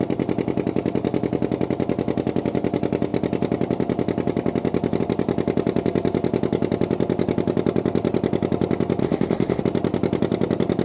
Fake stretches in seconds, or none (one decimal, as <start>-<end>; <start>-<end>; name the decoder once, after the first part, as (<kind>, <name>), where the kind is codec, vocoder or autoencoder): 9.0-9.6 (autoencoder, DAC-VAE)

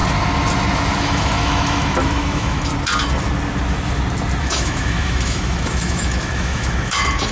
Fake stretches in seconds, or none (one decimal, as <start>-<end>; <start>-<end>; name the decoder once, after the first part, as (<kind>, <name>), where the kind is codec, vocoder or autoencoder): 1.0-2.7 (autoencoder, DAC-VAE); 4.4-7.3

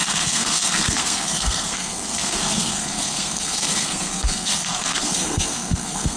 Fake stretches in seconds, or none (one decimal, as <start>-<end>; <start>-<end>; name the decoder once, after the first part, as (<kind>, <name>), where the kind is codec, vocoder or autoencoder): 0.0-6.2 (codec, SNAC)

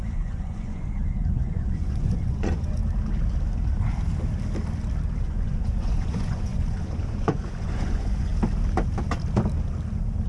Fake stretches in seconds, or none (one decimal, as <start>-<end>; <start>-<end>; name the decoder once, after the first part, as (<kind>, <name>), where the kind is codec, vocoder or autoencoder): 0.0-2.8 (vocoder, Vocos); 5.2-8.3

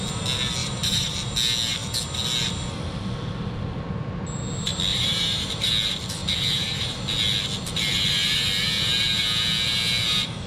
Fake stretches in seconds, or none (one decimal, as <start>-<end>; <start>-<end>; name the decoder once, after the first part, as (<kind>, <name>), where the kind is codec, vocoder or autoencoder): 0.6-1.3 (vocoder, BigVGAN v2); 4.9-5.7; 6.2-7.0